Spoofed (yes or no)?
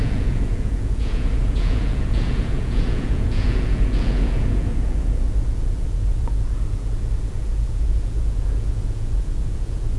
yes